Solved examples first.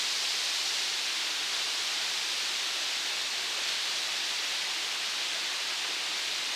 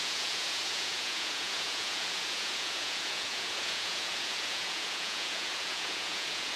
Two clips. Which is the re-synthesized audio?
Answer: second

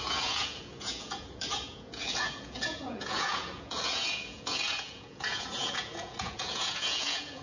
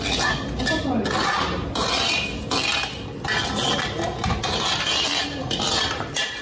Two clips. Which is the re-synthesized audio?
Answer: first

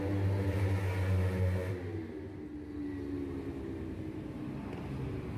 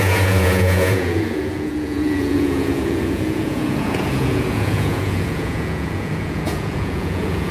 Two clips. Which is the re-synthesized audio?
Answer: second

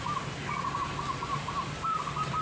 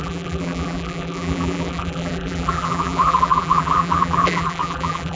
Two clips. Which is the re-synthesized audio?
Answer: second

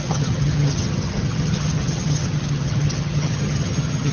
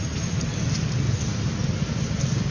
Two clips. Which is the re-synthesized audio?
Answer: first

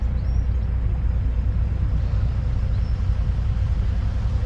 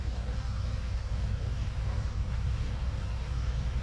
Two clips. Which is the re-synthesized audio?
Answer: second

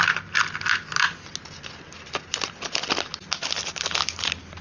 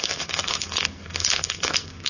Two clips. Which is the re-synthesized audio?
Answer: second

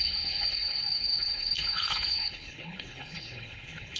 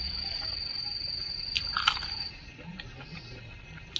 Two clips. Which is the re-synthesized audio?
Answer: first